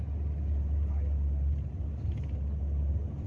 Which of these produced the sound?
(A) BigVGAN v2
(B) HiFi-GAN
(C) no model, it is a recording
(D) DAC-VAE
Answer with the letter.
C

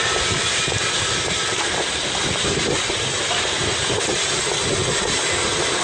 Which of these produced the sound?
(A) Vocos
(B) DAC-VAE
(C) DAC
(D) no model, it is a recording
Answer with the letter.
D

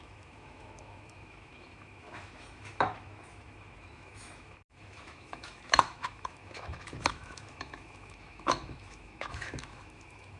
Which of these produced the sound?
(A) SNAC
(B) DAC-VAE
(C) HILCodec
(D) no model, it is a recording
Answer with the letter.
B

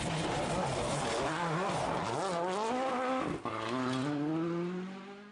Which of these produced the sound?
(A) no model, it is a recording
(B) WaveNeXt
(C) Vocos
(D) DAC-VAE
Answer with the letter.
A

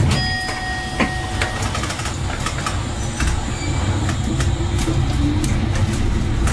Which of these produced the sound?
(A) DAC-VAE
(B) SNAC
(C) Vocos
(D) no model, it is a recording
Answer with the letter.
D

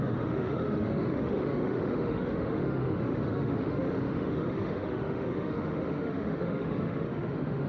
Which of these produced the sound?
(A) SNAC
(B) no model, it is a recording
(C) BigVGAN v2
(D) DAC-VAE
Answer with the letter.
D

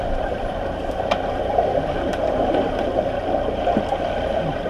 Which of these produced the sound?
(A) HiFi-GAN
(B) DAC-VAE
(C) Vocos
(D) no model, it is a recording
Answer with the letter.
D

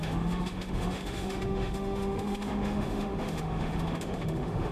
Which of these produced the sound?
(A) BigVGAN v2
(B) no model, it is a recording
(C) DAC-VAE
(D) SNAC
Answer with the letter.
C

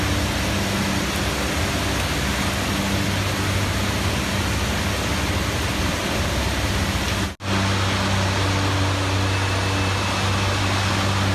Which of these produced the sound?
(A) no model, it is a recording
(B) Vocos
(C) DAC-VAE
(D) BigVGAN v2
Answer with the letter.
A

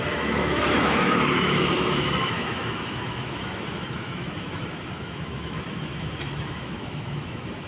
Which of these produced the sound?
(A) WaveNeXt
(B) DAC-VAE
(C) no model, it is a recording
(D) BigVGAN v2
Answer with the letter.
B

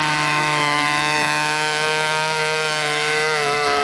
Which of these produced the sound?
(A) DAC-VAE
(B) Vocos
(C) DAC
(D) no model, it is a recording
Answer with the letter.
A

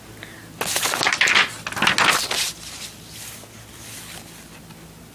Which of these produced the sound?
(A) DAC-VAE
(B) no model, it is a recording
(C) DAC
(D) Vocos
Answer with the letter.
B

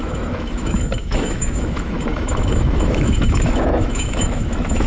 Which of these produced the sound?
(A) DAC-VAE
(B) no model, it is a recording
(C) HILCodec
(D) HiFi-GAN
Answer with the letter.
A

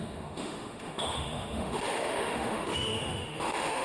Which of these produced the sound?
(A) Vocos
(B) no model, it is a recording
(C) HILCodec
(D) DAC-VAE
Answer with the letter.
D